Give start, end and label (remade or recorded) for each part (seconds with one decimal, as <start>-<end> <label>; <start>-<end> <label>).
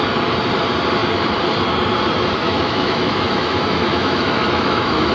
0.0-2.4 recorded; 2.4-5.1 remade